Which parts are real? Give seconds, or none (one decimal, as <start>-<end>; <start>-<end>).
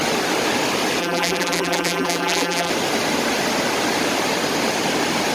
0.0-1.0; 2.7-5.3